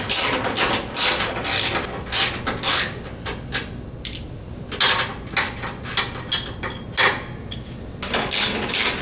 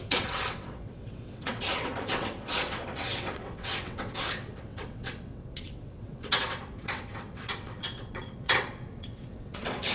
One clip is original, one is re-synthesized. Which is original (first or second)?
first